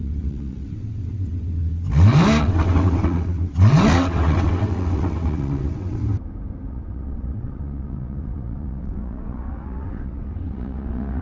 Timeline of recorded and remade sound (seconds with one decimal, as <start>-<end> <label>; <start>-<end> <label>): 0.0-1.7 remade; 1.7-2.4 recorded; 2.4-6.0 remade; 6.0-6.7 recorded; 6.7-11.2 remade